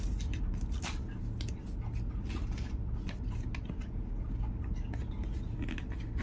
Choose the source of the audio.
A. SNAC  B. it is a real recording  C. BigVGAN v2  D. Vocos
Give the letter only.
B